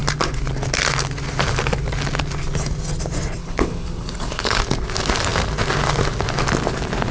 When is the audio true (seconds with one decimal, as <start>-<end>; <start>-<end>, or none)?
0.0-3.4; 4.6-7.1